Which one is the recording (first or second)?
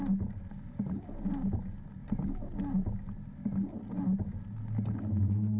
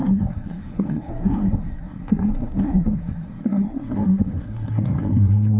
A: first